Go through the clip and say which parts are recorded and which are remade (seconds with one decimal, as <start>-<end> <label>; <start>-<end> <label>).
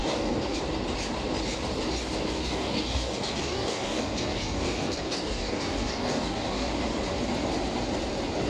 0.0-0.6 remade; 0.6-2.3 recorded; 2.3-6.7 remade; 6.7-8.5 recorded